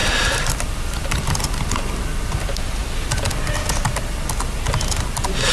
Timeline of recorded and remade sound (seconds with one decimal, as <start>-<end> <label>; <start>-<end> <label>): 0.0-1.8 remade; 1.8-2.8 recorded; 2.8-3.8 remade; 3.8-5.5 recorded